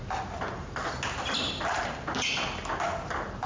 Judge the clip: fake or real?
real